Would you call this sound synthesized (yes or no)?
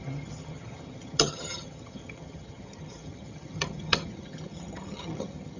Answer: yes